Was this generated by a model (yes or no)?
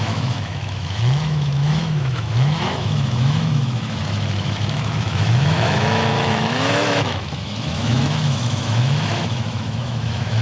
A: yes